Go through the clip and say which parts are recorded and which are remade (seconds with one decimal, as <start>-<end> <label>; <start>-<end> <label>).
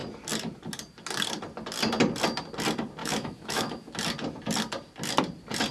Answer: 0.0-3.0 recorded; 3.0-3.9 remade; 3.9-5.7 recorded